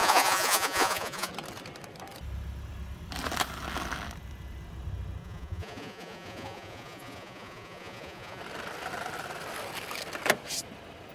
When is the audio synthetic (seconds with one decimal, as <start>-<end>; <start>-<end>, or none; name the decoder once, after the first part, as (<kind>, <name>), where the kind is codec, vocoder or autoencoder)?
0.0-1.3 (vocoder, Vocos); 5.2-8.4